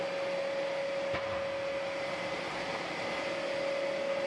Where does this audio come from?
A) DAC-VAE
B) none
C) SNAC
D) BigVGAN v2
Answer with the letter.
B